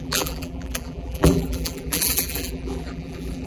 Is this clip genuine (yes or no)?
no